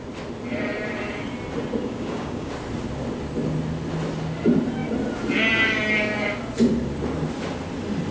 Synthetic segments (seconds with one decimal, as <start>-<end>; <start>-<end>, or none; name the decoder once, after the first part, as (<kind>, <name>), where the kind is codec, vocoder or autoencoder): 1.8-2.5 (codec, DAC)

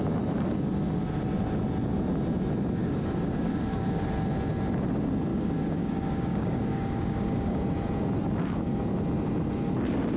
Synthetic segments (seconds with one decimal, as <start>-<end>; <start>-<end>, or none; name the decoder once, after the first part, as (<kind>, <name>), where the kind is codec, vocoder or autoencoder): 2.8-4.0 (codec, DAC); 5.3-7.6

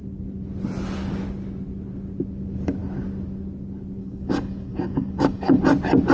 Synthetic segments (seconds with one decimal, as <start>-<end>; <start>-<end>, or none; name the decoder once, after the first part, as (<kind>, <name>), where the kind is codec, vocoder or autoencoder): 4.0-5.6 (codec, DAC)

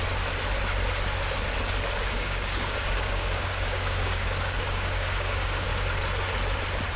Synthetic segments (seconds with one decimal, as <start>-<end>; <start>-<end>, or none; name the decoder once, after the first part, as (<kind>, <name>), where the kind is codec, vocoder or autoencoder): 2.1-5.7 (codec, DAC)

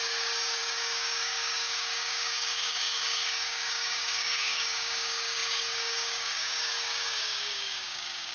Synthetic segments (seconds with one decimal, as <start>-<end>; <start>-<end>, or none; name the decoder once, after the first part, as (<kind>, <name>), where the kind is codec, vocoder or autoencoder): 0.0-8.3 (codec, DAC)

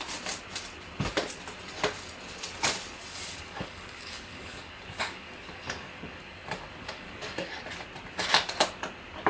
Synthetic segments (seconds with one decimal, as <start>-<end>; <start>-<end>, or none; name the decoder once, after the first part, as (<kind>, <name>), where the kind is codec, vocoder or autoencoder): 3.0-7.6 (codec, DAC)

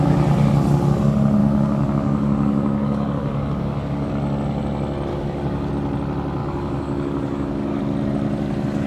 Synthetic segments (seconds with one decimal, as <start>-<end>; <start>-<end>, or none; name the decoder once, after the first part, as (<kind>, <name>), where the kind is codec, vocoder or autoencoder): 1.4-4.1 (codec, DAC); 5.1-5.7; 6.4-7.8